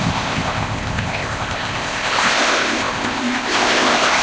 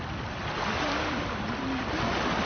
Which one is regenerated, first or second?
first